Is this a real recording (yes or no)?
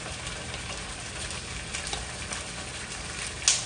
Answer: yes